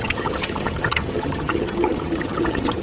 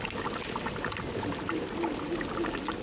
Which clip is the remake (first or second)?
first